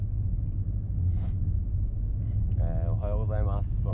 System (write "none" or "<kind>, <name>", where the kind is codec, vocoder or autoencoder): none